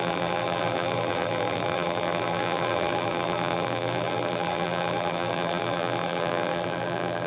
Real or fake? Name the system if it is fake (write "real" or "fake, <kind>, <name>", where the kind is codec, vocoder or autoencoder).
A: fake, vocoder, BigVGAN v2